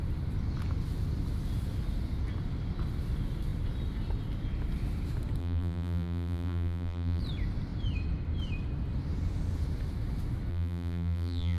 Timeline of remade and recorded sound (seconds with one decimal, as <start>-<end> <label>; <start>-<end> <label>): 0.0-5.4 recorded; 5.4-7.2 remade; 7.2-10.5 recorded; 10.5-11.6 remade